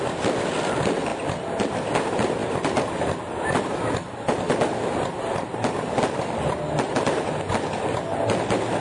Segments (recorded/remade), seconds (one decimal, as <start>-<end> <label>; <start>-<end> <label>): 0.0-2.4 recorded; 2.4-7.6 remade; 7.6-8.8 recorded